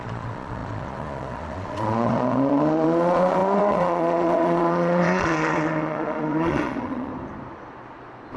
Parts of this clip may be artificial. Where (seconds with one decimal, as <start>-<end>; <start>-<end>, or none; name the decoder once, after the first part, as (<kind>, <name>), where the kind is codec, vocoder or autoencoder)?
0.0-7.1 (vocoder, Vocos)